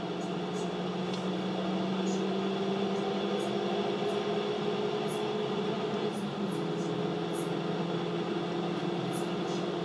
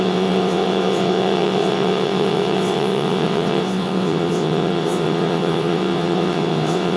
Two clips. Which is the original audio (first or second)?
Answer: first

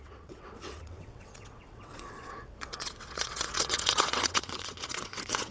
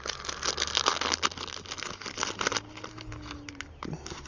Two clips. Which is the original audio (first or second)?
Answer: second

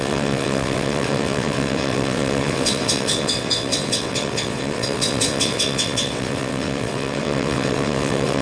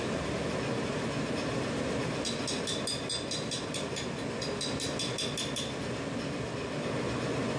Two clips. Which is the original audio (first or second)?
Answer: second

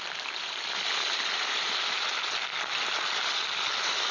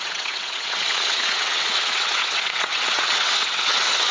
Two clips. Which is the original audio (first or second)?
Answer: first